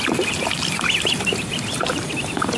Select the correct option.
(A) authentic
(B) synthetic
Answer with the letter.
A